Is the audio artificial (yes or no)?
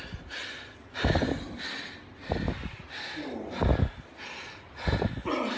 no